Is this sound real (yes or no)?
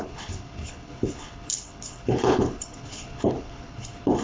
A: no